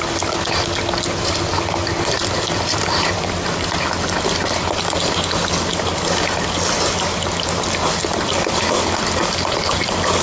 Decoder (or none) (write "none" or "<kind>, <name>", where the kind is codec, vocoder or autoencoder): none